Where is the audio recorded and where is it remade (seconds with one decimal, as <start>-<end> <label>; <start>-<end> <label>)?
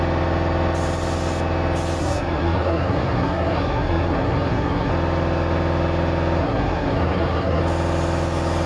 0.0-2.0 recorded; 2.0-4.9 remade; 4.9-6.4 recorded; 6.4-7.6 remade; 7.6-8.7 recorded